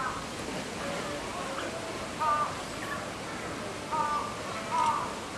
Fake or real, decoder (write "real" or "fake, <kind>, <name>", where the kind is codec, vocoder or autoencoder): real